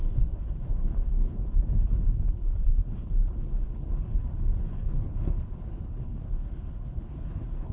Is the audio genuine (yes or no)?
no